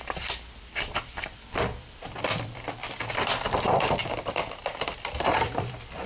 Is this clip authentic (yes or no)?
no